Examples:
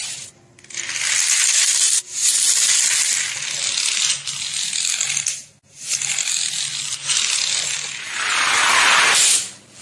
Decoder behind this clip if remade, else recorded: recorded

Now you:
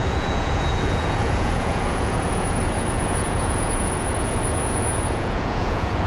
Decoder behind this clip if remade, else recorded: remade, vocoder, Vocos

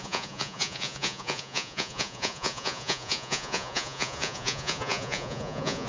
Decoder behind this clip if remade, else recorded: remade, vocoder, Vocos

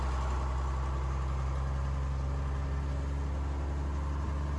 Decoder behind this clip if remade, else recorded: recorded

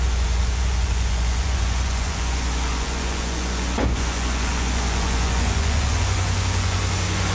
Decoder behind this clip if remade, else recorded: remade, vocoder, Vocos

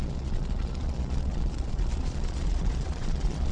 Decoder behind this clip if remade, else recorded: remade, vocoder, Vocos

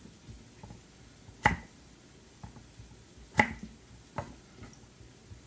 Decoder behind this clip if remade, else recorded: recorded